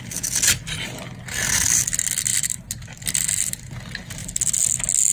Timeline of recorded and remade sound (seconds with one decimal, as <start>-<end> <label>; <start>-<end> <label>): 0.0-2.3 recorded; 2.3-3.7 remade; 3.7-5.1 recorded